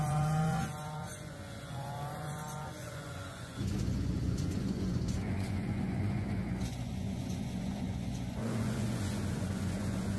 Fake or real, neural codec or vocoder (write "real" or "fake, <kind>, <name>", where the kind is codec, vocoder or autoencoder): fake, vocoder, Vocos